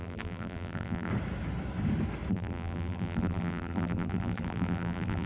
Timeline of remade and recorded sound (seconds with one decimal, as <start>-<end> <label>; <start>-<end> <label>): 0.0-1.1 remade; 1.1-2.3 recorded; 2.3-5.3 remade